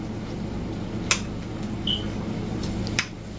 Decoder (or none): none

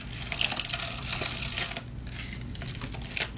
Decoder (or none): none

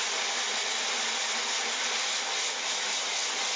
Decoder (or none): none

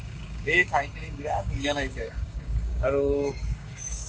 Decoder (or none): codec, DAC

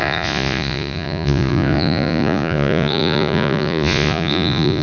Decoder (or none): vocoder, Vocos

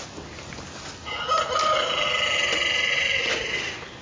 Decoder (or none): none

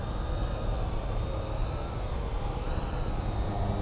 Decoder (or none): none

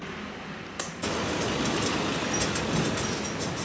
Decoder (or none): none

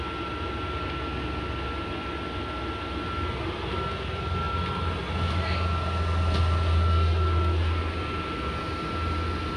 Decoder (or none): none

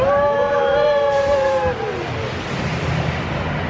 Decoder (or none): none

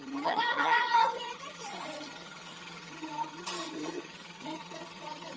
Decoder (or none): vocoder, HiFi-GAN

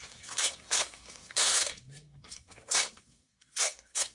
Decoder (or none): codec, SNAC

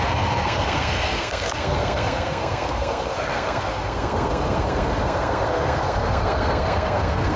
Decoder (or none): codec, SNAC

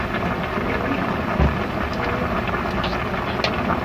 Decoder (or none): none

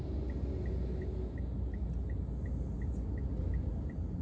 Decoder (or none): none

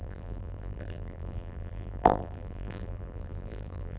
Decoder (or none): vocoder, BigVGAN v2